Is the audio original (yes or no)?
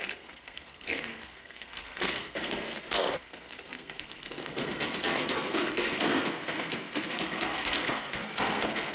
no